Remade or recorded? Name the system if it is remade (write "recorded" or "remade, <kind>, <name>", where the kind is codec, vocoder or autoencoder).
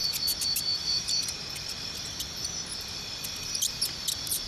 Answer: recorded